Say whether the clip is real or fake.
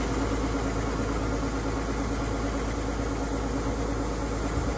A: real